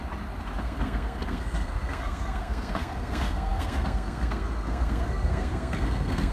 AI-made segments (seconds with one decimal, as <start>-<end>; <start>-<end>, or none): 0.6-6.3